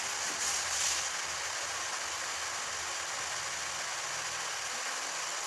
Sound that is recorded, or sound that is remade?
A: recorded